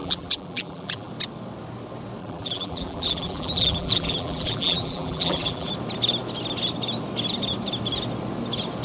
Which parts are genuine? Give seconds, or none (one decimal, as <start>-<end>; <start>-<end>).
1.1-2.2; 5.7-8.8